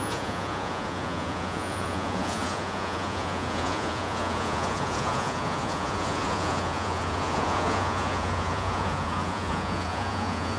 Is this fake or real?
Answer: fake